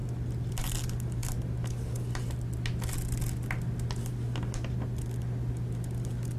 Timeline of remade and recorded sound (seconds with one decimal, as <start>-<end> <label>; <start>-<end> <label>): 0.0-6.4 recorded